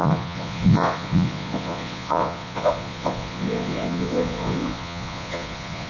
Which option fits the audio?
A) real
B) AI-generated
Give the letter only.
B